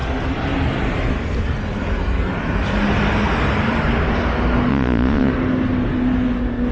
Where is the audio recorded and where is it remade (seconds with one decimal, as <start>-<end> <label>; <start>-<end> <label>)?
0.0-4.7 recorded; 4.7-5.3 remade; 5.3-6.7 recorded